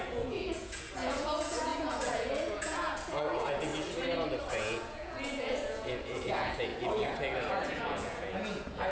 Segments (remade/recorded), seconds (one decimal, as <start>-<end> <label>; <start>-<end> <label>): 0.0-3.7 remade; 3.7-4.5 recorded; 4.5-6.7 remade; 6.7-7.5 recorded; 7.5-8.9 remade